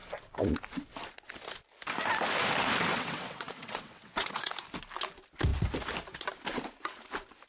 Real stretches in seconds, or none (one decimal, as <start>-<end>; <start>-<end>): 0.0-2.9; 4.5-7.5